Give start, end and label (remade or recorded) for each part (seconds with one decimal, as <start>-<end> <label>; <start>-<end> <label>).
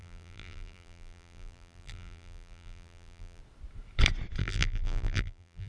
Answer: 0.0-3.4 remade; 3.4-4.4 recorded; 4.4-5.7 remade